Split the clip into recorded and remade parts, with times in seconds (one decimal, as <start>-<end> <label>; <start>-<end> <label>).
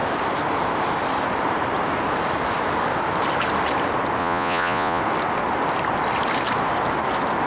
0.0-4.2 recorded; 4.2-5.0 remade; 5.0-7.5 recorded